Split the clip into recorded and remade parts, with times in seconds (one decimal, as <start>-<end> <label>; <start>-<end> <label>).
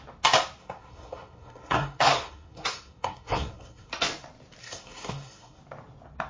0.0-0.6 recorded; 0.6-3.9 remade; 3.9-4.6 recorded; 4.6-5.6 remade; 5.6-6.3 recorded